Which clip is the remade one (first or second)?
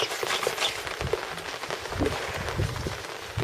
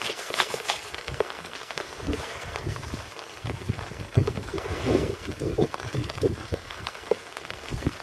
second